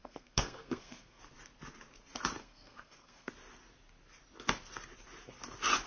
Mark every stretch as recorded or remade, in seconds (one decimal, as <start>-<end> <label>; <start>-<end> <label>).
0.0-1.2 remade; 1.2-2.4 recorded; 2.4-3.3 remade; 3.3-5.9 recorded